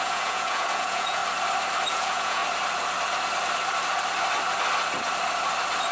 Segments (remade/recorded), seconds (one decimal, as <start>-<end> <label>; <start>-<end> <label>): 0.0-1.2 remade; 1.2-1.9 recorded; 1.9-2.4 remade; 2.4-5.9 recorded